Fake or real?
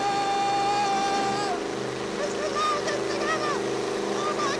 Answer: real